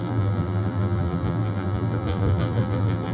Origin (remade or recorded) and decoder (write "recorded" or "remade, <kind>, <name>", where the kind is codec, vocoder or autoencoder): remade, vocoder, BigVGAN v2